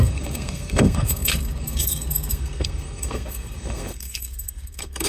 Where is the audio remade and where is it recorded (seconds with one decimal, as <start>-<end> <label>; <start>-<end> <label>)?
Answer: 0.0-5.1 remade